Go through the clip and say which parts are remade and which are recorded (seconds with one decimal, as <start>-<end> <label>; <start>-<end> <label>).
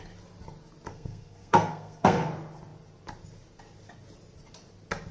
0.0-0.9 recorded; 0.9-2.3 remade; 2.3-5.1 recorded